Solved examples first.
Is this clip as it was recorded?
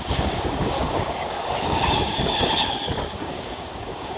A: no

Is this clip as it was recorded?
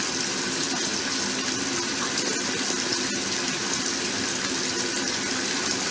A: yes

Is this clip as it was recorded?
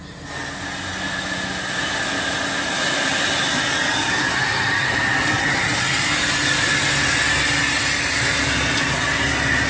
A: yes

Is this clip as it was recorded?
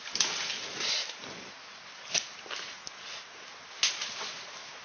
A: yes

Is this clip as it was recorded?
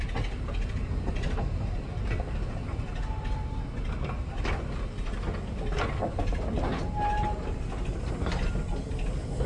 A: yes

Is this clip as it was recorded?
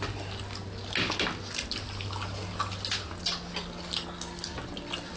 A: yes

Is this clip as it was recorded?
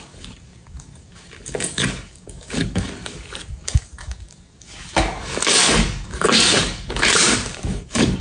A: no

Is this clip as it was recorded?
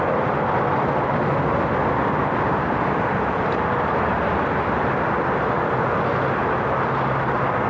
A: yes